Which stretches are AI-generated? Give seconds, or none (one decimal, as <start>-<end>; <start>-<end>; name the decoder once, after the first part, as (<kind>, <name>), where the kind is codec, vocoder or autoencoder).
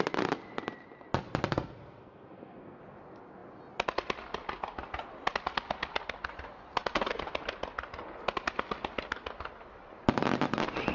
1.5-2.8 (codec, SNAC)